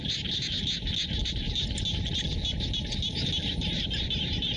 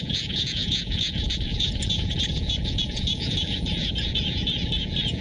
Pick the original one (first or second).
first